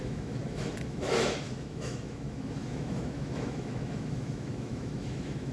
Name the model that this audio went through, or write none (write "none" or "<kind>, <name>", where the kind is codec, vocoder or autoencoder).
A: autoencoder, DAC-VAE